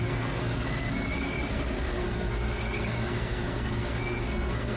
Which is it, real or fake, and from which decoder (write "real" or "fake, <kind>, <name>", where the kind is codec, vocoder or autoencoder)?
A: fake, codec, SNAC